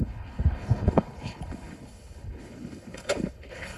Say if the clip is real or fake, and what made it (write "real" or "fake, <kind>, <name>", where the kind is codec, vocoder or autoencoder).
fake, codec, HILCodec